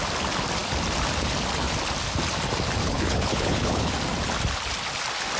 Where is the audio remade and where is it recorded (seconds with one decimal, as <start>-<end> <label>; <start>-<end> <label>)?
0.0-2.8 recorded; 2.8-3.9 remade; 3.9-5.4 recorded